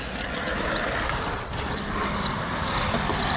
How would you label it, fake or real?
real